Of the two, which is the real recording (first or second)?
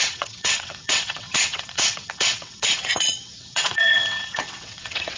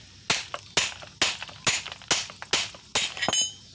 second